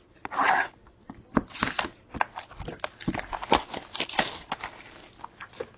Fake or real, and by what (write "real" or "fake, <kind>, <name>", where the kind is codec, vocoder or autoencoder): real